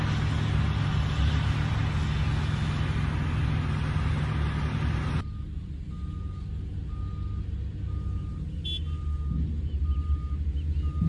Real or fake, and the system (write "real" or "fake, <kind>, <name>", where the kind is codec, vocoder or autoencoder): real